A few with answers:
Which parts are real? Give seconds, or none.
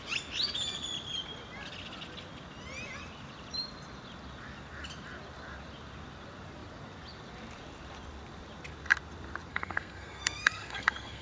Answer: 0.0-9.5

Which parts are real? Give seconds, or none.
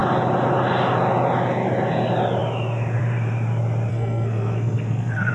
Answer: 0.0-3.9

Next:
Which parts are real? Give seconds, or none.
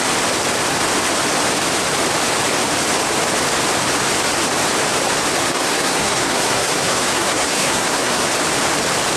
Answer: 0.0-5.4; 8.2-9.2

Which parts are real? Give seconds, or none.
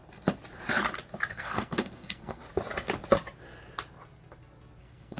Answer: 0.0-1.3; 2.4-4.8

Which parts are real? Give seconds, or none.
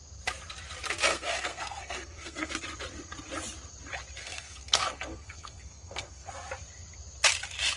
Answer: 0.0-1.1; 2.5-4.2; 6.3-7.8